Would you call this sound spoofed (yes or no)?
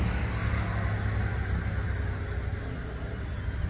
no